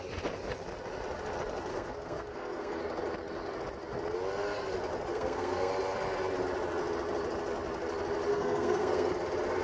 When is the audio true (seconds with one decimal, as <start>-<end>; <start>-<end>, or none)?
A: 0.0-1.7; 2.8-5.1; 5.7-8.3; 9.1-9.6